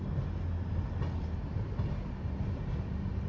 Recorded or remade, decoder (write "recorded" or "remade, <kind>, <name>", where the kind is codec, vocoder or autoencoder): recorded